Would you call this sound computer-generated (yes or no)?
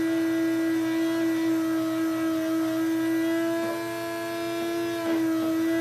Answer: no